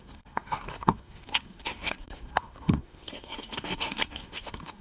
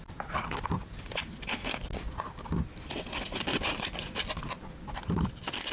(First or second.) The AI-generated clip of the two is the first